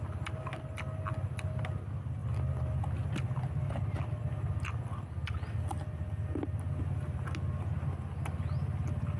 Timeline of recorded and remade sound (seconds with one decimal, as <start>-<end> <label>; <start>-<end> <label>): 0.0-9.2 recorded